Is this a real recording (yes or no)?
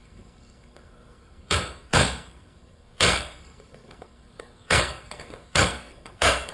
no